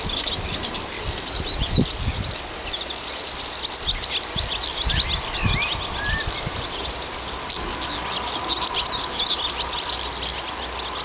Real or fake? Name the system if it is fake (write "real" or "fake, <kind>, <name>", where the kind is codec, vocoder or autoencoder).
real